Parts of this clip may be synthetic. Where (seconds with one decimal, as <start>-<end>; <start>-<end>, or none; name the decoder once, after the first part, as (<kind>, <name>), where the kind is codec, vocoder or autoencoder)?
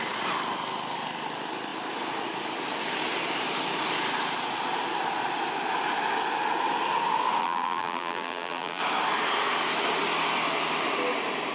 7.4-8.8 (vocoder, BigVGAN v2)